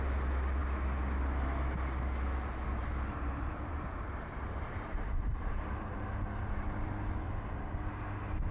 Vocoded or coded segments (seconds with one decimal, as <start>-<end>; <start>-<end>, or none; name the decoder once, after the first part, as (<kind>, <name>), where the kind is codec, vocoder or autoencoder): 2.7-7.2 (vocoder, BigVGAN v2)